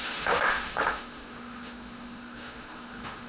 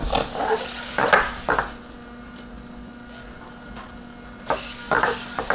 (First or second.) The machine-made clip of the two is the first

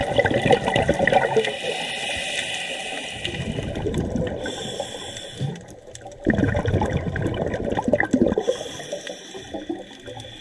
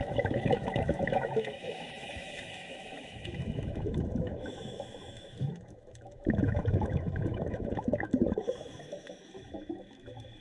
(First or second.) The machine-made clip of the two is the second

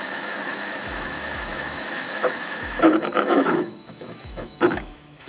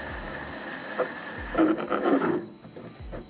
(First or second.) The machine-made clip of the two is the first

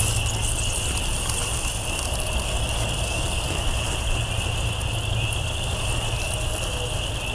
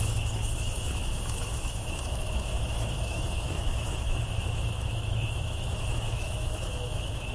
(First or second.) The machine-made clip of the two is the second